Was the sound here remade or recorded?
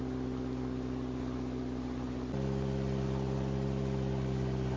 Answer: recorded